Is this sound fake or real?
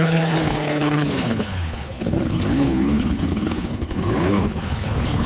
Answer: fake